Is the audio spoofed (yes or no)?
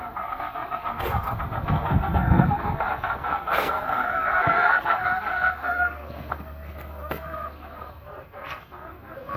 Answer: yes